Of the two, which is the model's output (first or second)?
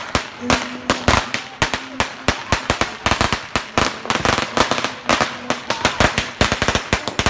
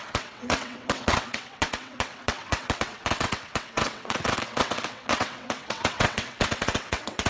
second